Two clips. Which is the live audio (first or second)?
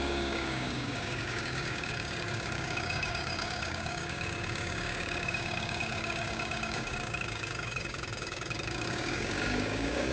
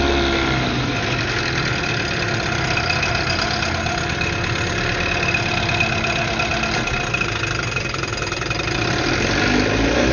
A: second